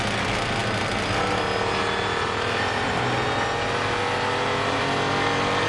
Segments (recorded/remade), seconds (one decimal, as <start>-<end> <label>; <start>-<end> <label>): 0.0-5.7 recorded